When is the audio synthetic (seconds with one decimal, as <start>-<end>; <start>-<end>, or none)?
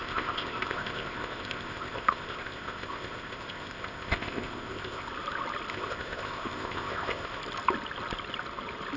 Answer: 0.0-5.1; 5.7-7.4